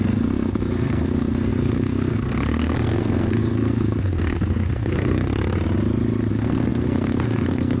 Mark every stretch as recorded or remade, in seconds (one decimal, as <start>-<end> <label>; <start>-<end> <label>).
0.0-5.3 remade; 5.3-6.3 recorded; 6.3-7.8 remade